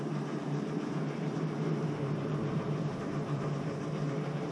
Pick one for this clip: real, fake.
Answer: fake